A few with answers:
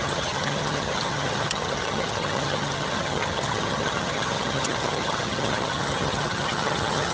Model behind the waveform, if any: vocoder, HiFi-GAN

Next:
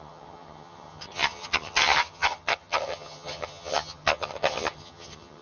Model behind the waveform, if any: vocoder, HiFi-GAN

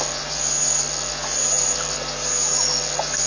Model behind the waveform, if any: none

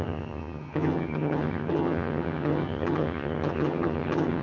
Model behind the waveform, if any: vocoder, HiFi-GAN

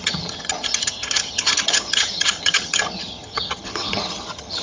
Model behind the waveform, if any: vocoder, HiFi-GAN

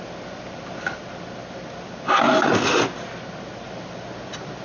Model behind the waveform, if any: none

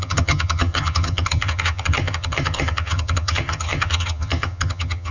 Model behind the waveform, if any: vocoder, HiFi-GAN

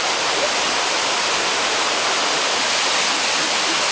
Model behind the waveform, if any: none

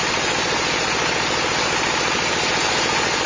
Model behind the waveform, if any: none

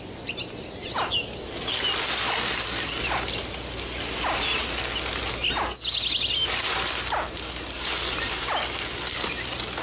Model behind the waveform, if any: none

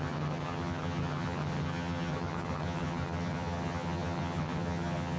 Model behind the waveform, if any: vocoder, HiFi-GAN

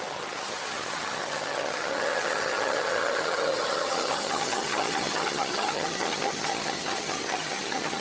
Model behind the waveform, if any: vocoder, HiFi-GAN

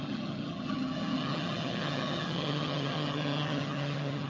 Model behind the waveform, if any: vocoder, HiFi-GAN